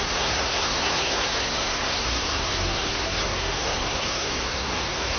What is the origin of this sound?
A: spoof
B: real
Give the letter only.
A